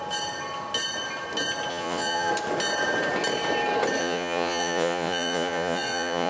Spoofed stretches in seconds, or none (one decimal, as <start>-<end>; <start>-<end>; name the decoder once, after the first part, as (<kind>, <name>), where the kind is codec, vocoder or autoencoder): 1.7-2.3 (vocoder, Vocos); 4.0-6.3